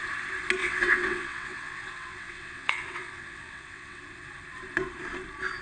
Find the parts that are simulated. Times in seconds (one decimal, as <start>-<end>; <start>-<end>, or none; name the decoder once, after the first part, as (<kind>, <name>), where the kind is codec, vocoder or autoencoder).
0.6-4.0 (vocoder, WaveNeXt)